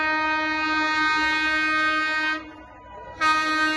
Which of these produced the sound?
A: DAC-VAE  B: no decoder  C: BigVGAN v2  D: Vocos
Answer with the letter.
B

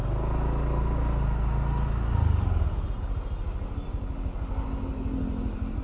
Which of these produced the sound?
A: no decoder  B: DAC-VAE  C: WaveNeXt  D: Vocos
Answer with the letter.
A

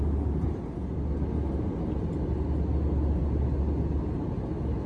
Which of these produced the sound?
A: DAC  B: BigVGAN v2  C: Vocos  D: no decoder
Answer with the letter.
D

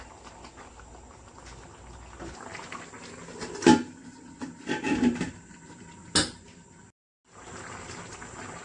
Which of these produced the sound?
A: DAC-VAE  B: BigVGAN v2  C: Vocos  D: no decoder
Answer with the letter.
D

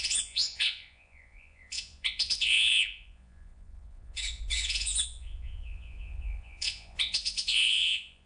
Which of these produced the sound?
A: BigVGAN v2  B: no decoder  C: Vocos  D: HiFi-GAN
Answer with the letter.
C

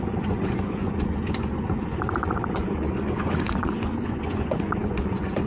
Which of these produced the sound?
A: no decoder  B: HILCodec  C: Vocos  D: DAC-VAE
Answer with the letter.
C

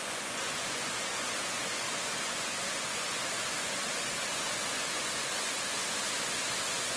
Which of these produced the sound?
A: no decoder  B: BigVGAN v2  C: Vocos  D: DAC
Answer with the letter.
C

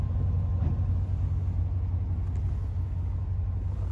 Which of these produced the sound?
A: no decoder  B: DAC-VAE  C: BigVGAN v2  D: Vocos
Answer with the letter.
A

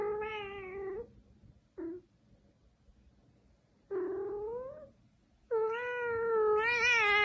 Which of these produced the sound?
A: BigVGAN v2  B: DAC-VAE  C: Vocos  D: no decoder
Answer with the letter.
D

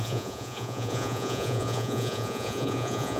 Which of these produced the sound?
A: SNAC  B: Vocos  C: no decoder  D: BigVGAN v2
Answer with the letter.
B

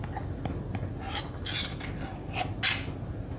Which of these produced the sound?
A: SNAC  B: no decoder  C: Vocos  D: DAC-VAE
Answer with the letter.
B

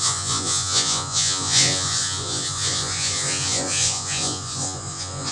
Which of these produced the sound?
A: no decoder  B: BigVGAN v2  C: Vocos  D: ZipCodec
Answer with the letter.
C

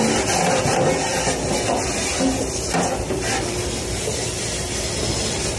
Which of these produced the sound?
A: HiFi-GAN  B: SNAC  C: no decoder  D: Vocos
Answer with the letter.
C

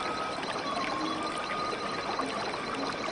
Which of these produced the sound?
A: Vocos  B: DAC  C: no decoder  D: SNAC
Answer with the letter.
C